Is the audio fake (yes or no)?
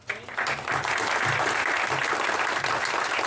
no